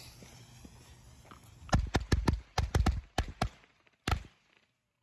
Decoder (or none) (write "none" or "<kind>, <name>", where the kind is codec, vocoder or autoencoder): none